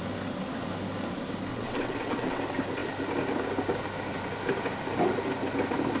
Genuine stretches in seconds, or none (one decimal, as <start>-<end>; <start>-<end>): 0.0-1.5; 2.4-6.0